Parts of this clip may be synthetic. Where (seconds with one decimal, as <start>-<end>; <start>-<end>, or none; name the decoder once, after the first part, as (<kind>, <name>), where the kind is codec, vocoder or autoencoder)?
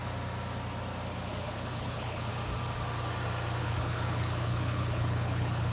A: 1.3-2.3 (codec, HILCodec); 3.6-5.7